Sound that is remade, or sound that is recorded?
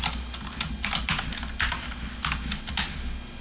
recorded